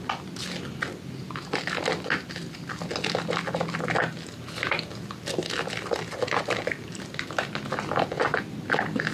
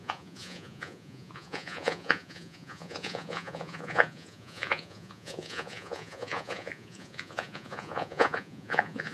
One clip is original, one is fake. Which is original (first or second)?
first